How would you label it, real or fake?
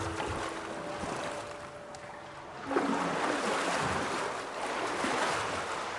real